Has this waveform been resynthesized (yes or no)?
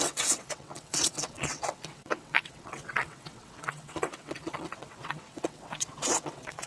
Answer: yes